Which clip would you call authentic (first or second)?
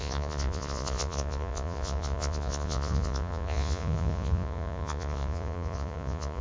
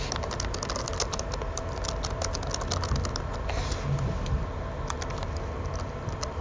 second